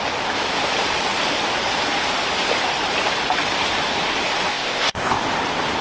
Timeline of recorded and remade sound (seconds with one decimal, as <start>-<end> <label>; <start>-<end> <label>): 0.0-4.5 recorded; 4.5-5.2 remade; 5.2-5.8 recorded